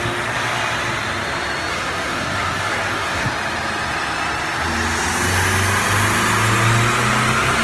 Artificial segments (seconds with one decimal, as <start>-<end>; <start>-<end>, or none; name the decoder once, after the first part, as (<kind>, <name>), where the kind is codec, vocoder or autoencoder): 1.7-3.3 (codec, SNAC)